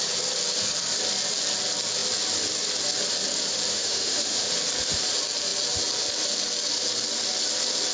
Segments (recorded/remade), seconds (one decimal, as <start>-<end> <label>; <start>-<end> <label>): 0.0-3.7 recorded; 3.7-4.5 remade; 4.5-7.9 recorded